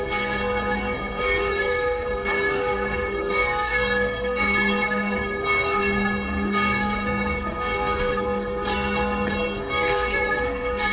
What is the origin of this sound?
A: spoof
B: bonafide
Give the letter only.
A